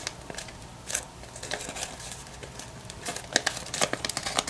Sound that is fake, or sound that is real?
real